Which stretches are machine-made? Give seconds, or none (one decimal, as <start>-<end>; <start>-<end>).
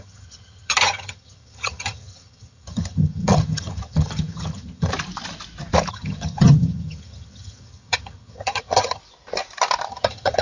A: 0.0-4.9; 5.9-9.0; 9.9-10.4